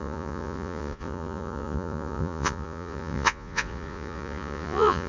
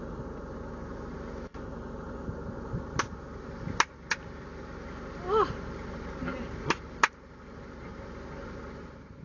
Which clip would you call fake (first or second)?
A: first